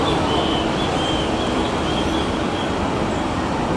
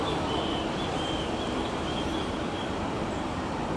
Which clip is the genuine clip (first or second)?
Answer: first